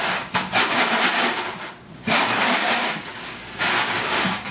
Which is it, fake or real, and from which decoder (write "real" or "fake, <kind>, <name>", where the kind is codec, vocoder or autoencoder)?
fake, codec, DAC